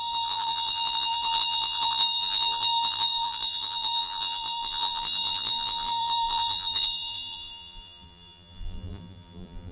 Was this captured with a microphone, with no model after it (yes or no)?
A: no